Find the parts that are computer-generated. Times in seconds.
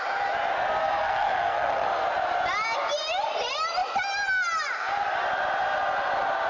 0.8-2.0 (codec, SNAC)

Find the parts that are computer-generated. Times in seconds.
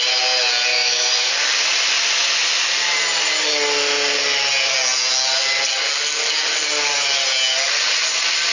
0.7-1.3 (autoencoder, DAC-VAE)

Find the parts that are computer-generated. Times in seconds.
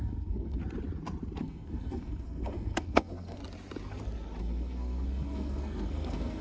0.0-0.6 (codec, SNAC); 1.4-3.4; 4.4-6.4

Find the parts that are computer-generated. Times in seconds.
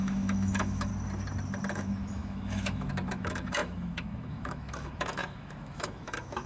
0.0-0.9 (autoencoder, DAC-VAE); 1.7-6.5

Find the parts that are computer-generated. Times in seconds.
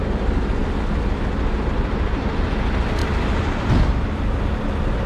none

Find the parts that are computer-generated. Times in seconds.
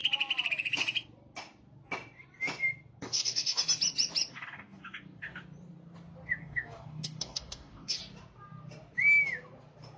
3.0-3.6 (codec, DAC); 4.3-5.4; 6.4-8.0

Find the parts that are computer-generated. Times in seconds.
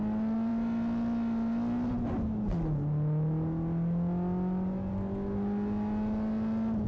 none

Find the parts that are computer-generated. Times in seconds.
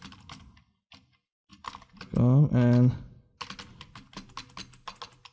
none